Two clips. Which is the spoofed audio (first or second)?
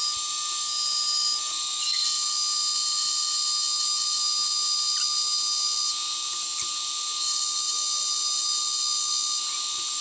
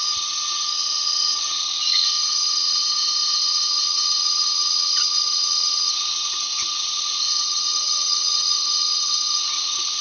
second